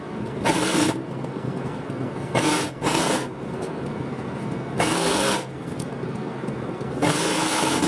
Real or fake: fake